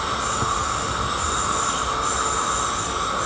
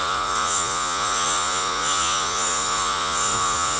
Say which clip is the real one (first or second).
first